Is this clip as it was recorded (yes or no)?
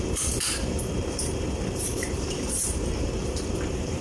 no